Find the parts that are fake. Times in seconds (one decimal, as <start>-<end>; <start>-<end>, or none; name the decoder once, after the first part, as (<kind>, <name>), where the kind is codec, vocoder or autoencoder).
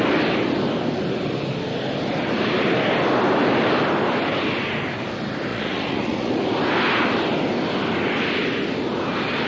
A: 5.5-6.3 (vocoder, Vocos)